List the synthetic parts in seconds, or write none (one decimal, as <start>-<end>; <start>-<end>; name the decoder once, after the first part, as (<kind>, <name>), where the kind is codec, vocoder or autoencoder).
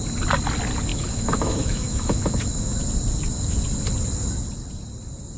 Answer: 0.9-2.8 (autoencoder, DAC-VAE)